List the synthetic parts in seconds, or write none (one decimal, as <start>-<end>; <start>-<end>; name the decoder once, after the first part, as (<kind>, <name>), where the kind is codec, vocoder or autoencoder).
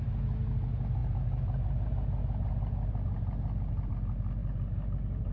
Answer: none